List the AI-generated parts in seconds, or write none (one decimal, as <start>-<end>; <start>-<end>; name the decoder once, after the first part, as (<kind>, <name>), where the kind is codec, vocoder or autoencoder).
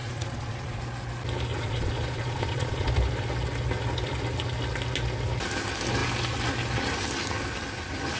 0.0-0.8 (vocoder, Vocos); 1.5-2.9